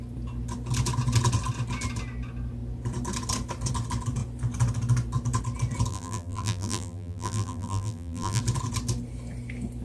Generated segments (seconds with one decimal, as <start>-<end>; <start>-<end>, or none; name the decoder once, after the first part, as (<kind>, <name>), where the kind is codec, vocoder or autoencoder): 5.9-8.4 (vocoder, BigVGAN v2)